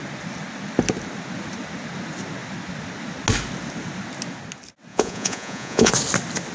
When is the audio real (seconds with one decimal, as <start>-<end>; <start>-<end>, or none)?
0.0-4.9; 5.9-6.5